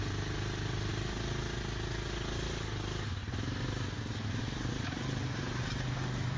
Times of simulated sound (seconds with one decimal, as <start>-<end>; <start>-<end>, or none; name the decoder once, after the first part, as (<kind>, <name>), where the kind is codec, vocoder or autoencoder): none